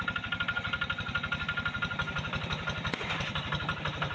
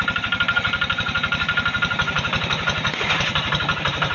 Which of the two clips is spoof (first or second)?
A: second